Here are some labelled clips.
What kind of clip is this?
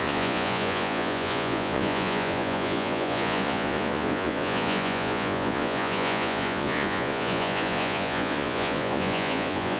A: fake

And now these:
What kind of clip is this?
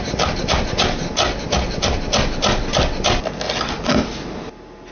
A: real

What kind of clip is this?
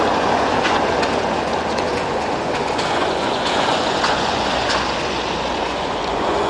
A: fake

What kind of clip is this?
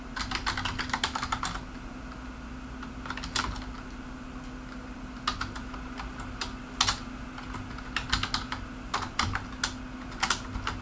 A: real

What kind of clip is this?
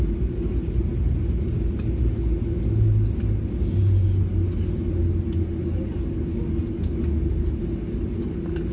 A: real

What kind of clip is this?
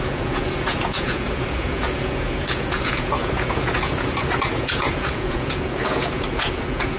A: fake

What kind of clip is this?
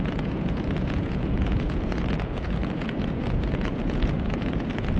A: fake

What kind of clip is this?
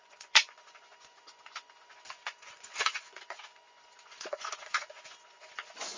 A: fake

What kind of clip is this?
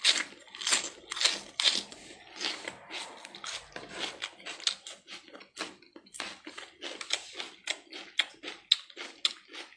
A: real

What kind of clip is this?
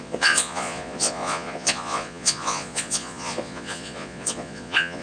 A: fake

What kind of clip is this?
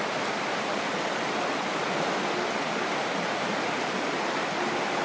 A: real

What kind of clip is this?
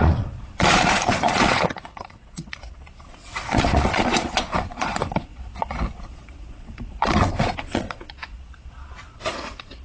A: fake